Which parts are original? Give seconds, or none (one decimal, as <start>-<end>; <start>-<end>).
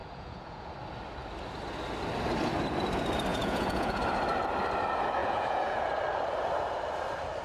0.7-3.3; 4.0-5.2; 5.9-7.4